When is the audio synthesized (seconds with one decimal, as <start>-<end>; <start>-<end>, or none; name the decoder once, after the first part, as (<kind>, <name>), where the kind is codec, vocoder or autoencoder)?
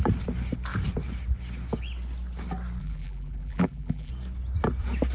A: 2.8-4.1 (vocoder, BigVGAN v2)